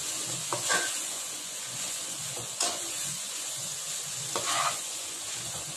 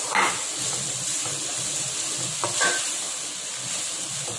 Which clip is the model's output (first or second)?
first